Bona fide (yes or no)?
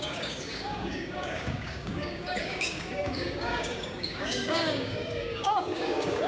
no